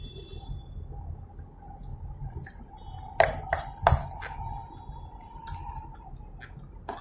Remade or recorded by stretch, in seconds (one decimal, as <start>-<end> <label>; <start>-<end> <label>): 0.0-7.0 recorded